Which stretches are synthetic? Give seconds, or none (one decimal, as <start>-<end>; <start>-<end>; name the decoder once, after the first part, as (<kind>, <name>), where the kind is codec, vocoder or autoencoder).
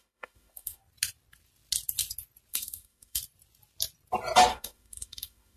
0.0-0.8 (autoencoder, DAC-VAE); 2.5-3.2; 4.5-5.6